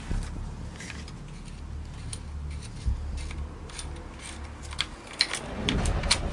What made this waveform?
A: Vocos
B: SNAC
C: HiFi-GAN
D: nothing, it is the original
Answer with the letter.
D